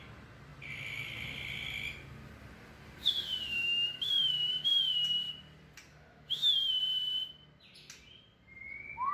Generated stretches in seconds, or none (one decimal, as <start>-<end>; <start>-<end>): 3.5-4.8; 5.9-6.5